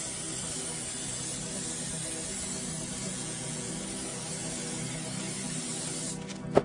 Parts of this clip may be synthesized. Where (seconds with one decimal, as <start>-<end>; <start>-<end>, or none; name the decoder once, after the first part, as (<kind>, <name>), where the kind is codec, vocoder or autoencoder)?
3.1-3.7 (vocoder, Vocos)